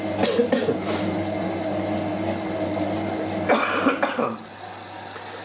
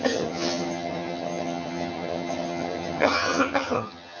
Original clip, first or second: first